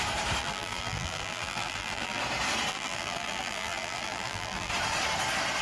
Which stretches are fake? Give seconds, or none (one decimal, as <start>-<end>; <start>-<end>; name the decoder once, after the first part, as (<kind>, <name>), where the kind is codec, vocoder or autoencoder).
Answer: 0.4-2.2 (vocoder, BigVGAN v2); 2.7-4.7

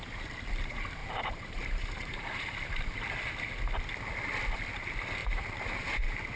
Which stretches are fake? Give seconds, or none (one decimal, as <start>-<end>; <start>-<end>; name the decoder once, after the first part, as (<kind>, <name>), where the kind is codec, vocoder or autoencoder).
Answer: 1.0-3.0 (vocoder, BigVGAN v2); 5.2-5.8

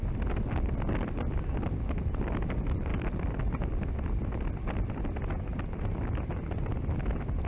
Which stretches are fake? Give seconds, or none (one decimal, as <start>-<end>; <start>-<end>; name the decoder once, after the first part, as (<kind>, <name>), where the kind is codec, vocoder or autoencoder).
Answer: none

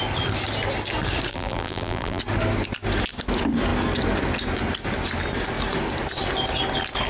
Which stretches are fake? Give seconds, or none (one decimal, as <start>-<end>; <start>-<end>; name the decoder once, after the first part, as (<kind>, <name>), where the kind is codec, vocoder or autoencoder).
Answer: 1.3-2.2 (vocoder, BigVGAN v2)

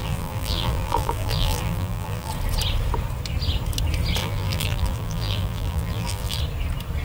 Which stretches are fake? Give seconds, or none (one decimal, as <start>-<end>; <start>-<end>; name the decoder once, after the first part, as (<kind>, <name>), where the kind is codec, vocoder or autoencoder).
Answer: 0.0-2.3 (vocoder, BigVGAN v2); 4.2-6.4

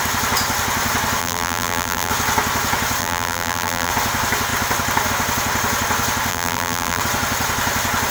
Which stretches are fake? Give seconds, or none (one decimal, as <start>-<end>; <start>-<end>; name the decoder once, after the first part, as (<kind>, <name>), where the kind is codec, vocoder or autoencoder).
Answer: 1.2-2.1 (vocoder, BigVGAN v2); 3.0-3.9; 6.3-7.0